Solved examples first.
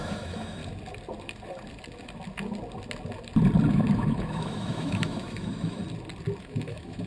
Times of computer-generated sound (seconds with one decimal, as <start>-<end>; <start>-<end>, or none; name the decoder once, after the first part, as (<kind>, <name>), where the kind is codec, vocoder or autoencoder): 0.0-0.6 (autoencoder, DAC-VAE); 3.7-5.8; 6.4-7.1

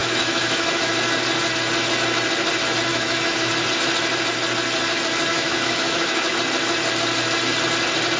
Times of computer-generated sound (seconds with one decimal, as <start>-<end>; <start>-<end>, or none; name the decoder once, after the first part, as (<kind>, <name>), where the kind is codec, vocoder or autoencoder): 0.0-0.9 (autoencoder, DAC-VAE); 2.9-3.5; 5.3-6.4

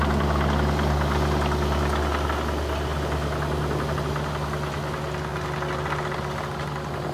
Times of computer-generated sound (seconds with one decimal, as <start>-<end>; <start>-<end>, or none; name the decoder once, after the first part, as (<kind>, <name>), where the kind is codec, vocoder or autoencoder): none

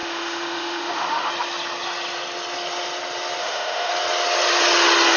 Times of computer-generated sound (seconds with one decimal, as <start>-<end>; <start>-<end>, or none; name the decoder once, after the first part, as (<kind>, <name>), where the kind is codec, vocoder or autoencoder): 0.0-1.3 (autoencoder, DAC-VAE); 3.4-3.9

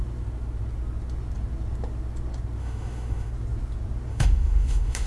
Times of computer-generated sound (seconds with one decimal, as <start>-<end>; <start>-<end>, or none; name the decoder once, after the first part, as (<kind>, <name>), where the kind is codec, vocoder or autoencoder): 2.6-3.3 (autoencoder, DAC-VAE); 4.1-5.1